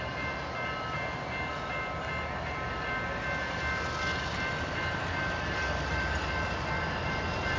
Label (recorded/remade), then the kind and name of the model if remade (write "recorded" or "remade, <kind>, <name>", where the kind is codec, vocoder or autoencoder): recorded